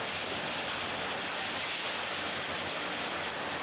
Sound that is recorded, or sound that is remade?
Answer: recorded